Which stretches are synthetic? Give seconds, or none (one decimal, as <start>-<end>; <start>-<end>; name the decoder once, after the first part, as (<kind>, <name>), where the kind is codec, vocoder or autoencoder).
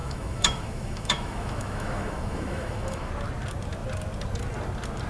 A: 0.0-3.1 (autoencoder, DAC-VAE)